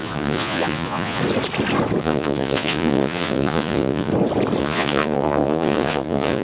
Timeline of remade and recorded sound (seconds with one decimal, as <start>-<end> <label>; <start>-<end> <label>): 0.0-1.2 remade; 1.2-2.0 recorded; 2.0-4.1 remade; 4.1-4.6 recorded; 4.6-6.4 remade